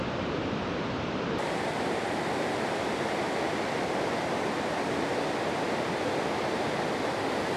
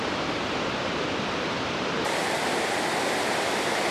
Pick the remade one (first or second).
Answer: second